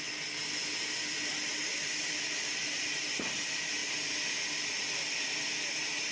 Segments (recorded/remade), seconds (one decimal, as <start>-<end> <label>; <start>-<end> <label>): 0.0-6.1 recorded